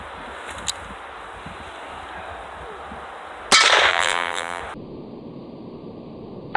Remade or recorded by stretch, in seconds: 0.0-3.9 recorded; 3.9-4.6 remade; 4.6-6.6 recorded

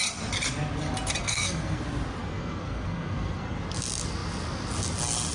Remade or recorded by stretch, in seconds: 0.0-1.2 recorded; 1.2-1.8 remade; 1.8-2.2 recorded; 2.2-3.6 remade; 3.6-5.3 recorded

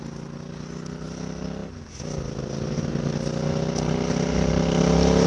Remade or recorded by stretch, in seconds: 0.0-5.3 recorded

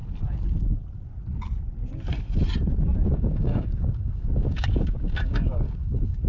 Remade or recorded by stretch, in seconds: 0.0-3.1 recorded; 3.1-6.3 remade

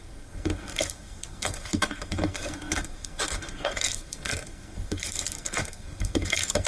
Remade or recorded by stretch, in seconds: 0.0-6.7 remade

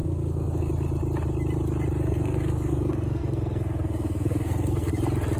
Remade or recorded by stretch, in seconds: 0.0-0.7 remade; 0.7-2.0 recorded; 2.0-4.9 remade; 4.9-5.4 recorded

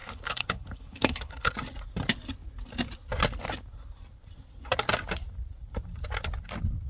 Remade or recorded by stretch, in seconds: 0.0-1.5 remade; 1.5-6.9 recorded